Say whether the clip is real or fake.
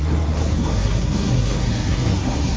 fake